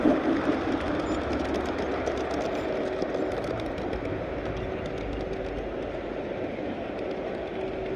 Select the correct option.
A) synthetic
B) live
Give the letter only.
B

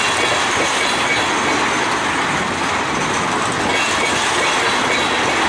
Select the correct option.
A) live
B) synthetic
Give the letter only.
A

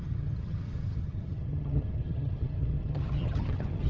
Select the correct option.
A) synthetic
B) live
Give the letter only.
A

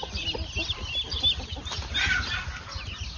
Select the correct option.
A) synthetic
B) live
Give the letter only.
B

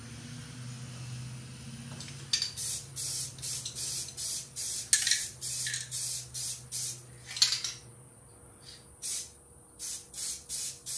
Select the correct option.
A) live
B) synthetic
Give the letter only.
A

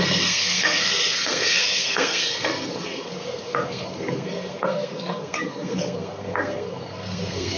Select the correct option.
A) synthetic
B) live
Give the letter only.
A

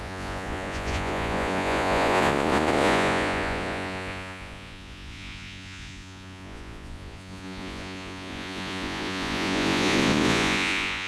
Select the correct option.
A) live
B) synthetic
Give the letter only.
B